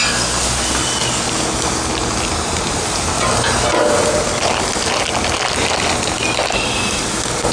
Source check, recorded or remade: recorded